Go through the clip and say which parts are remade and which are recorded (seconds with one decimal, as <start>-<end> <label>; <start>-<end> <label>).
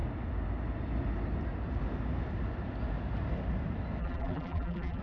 0.0-4.0 recorded; 4.0-5.0 remade